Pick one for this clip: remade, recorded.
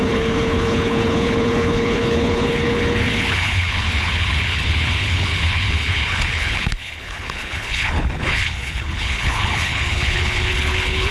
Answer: remade